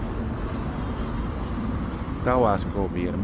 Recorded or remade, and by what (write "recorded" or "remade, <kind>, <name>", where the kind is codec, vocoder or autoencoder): recorded